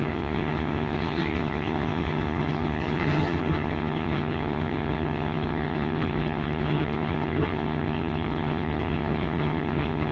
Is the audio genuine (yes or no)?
no